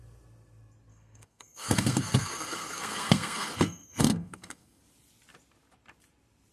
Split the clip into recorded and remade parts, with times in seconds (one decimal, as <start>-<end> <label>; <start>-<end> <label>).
0.0-0.9 recorded; 0.9-4.8 remade; 4.8-6.5 recorded